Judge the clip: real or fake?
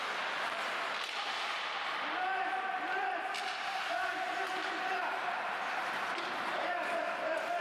fake